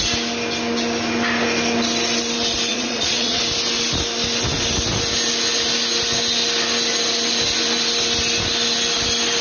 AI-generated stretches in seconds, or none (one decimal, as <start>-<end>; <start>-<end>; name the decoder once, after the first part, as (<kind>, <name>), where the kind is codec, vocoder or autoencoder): 2.7-3.4 (vocoder, Vocos)